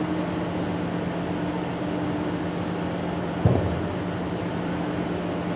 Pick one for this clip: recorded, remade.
recorded